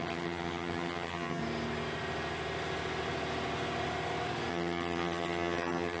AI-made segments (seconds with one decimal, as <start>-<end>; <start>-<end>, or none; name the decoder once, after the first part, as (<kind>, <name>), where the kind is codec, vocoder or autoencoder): 0.0-1.4 (vocoder, HiFi-GAN); 4.5-6.0